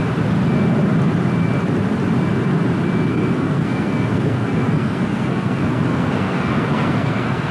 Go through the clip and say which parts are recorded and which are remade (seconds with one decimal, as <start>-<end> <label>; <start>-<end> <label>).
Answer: 0.0-3.1 recorded; 3.1-7.5 remade